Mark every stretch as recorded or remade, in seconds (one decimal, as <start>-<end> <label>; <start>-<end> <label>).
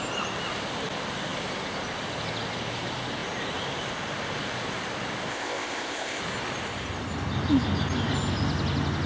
0.0-5.3 recorded; 5.3-6.2 remade; 6.2-9.1 recorded